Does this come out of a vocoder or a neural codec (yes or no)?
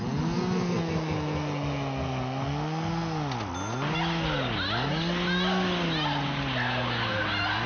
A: no